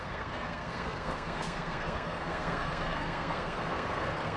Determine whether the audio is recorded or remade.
remade